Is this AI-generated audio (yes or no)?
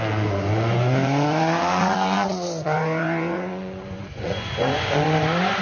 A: yes